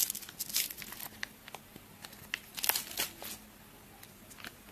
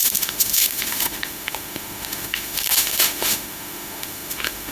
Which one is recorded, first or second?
first